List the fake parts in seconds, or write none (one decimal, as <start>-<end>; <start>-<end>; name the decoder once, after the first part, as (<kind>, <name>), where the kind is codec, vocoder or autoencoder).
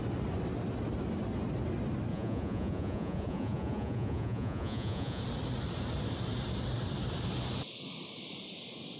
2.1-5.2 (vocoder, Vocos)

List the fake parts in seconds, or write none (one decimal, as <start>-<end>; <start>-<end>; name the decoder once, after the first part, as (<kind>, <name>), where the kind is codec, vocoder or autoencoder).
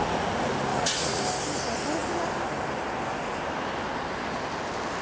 0.7-1.2 (vocoder, Vocos)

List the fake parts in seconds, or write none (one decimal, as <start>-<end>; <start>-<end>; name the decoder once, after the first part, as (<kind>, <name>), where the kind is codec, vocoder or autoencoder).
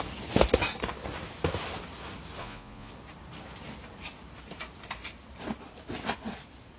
2.4-2.9 (vocoder, Vocos)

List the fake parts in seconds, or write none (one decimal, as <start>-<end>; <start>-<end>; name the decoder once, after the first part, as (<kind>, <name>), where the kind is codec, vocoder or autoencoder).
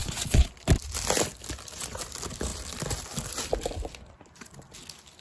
0.0-0.5 (vocoder, Vocos)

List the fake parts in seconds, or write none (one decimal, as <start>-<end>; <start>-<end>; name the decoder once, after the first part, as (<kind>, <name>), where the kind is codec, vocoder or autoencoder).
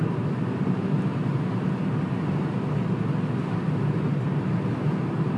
none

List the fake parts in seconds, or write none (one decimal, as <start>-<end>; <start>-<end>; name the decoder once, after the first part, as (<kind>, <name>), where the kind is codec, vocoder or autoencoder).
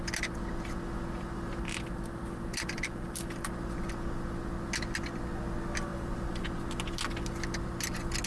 none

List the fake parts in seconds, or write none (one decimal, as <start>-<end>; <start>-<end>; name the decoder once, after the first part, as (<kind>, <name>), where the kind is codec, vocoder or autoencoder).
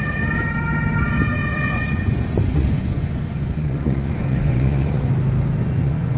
1.4-5.1 (vocoder, Vocos); 5.6-6.2